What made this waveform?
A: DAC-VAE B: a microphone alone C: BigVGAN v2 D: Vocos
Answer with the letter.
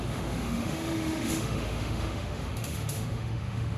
A